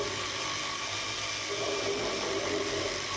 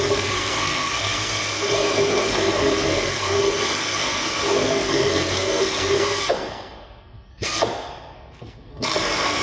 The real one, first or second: first